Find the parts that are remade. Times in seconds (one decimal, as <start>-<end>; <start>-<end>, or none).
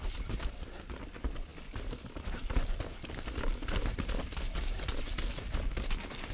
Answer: none